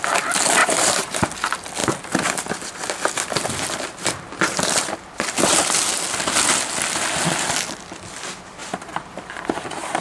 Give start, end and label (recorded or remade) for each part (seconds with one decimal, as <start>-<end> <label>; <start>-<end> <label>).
0.0-0.6 recorded; 0.6-1.3 remade; 1.3-8.6 recorded; 8.6-9.2 remade; 9.2-10.0 recorded